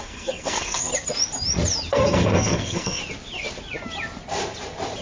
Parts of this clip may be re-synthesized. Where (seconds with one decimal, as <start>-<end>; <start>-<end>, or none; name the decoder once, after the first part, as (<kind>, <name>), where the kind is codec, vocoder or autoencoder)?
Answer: 0.0-0.9 (codec, SNAC); 1.9-3.0